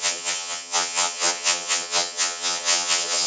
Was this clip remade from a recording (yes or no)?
yes